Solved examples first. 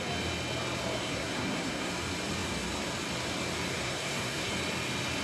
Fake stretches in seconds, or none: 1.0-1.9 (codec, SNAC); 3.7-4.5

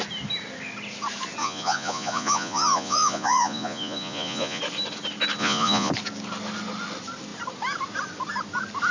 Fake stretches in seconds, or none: 1.4-4.6 (vocoder, Vocos); 5.4-5.9

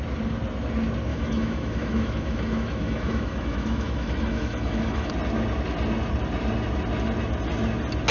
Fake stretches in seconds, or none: 1.1-5.1 (autoencoder, DAC-VAE)

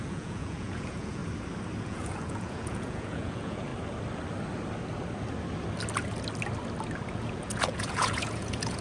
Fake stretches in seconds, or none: 0.0-1.2 (vocoder, Vocos); 1.8-3.7; 7.1-8.8